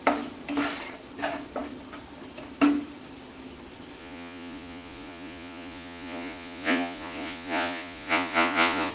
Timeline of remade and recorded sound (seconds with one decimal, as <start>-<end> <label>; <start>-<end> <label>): 0.0-4.0 recorded; 4.0-8.9 remade